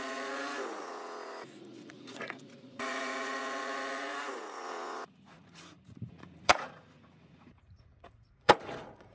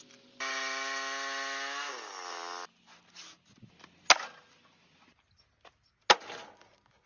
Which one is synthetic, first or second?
first